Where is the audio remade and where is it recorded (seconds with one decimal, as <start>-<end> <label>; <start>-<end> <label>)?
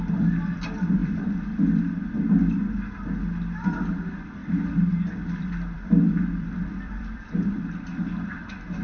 0.0-1.0 recorded; 1.0-1.8 remade; 1.8-4.4 recorded; 4.4-7.7 remade; 7.7-8.8 recorded